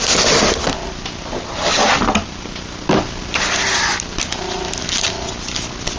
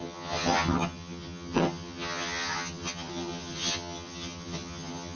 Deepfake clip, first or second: second